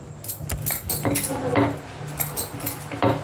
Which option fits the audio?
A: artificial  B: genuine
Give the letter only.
B